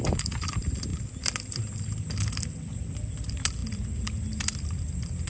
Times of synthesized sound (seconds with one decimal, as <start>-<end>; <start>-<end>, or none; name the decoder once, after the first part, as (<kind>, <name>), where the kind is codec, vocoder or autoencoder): none